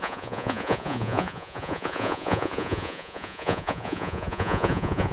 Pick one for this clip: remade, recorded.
remade